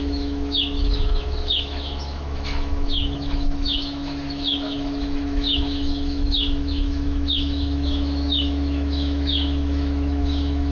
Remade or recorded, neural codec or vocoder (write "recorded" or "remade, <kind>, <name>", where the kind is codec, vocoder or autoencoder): remade, autoencoder, DAC-VAE